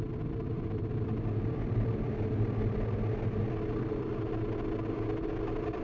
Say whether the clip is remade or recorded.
recorded